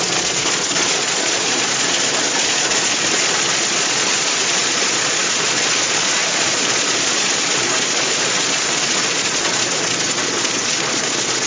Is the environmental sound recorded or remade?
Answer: remade